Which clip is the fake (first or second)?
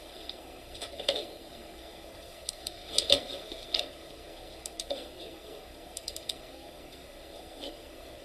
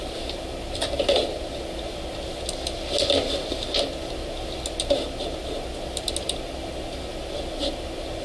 first